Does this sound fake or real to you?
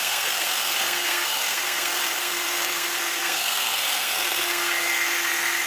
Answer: fake